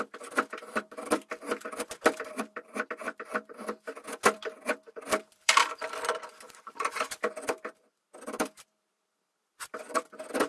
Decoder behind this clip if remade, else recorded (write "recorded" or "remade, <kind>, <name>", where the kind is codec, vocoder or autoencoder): remade, vocoder, BigVGAN v2